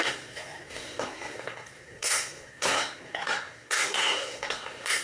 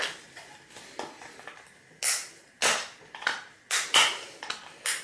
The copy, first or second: first